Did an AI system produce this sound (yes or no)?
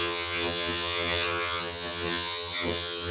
yes